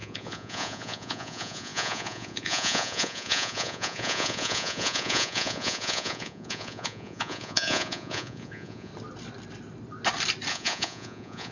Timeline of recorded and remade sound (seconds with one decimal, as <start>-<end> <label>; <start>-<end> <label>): 0.0-8.9 remade; 8.9-10.5 recorded; 10.5-11.5 remade